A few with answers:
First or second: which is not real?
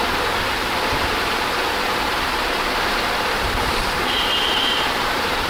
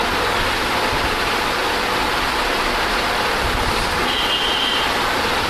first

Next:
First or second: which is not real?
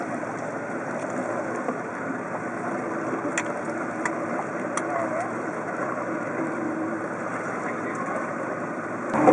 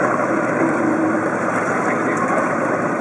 second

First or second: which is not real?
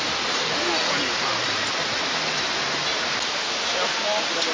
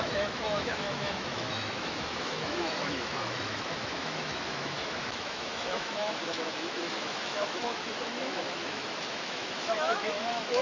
second